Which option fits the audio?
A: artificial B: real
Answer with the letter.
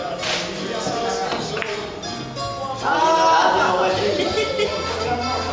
B